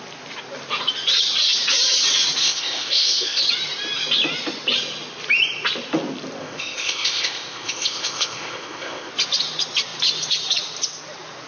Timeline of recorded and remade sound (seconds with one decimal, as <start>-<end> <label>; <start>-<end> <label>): 0.0-2.4 recorded; 2.4-3.4 remade; 3.4-6.4 recorded; 6.4-9.1 remade; 9.1-11.5 recorded